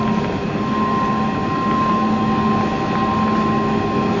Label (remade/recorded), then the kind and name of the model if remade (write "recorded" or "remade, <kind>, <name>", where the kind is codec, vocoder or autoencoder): recorded